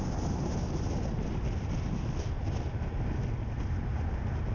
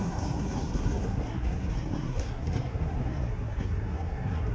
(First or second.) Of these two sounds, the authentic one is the first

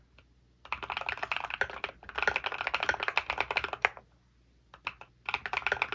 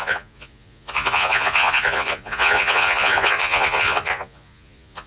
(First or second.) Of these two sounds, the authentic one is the first